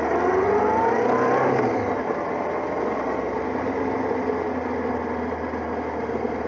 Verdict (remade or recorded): recorded